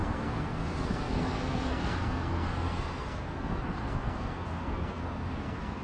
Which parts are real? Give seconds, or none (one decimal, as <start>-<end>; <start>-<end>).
none